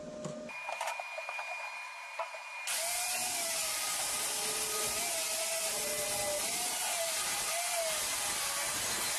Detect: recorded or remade recorded